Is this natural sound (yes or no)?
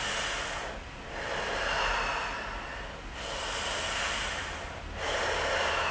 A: yes